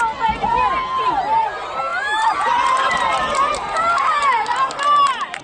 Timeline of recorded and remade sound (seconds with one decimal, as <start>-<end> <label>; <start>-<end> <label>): 0.0-1.9 recorded; 1.9-5.4 remade